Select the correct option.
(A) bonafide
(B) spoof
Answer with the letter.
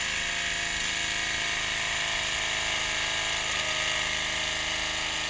A